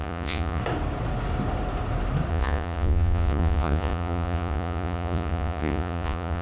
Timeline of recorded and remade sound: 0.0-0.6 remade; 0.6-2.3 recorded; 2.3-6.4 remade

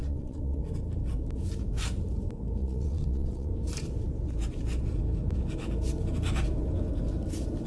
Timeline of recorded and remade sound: 0.0-0.6 remade; 0.6-2.6 recorded; 2.6-3.5 remade; 3.5-7.7 recorded

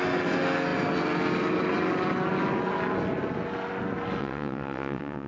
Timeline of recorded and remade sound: 0.0-4.2 recorded; 4.2-5.3 remade

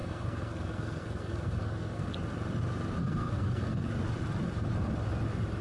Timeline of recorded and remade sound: 0.0-2.1 remade; 2.1-3.0 recorded; 3.0-3.9 remade; 3.9-5.6 recorded